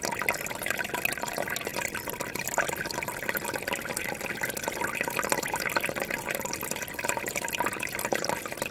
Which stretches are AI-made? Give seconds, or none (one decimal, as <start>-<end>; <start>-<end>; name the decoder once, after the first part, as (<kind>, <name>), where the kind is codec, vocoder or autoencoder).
none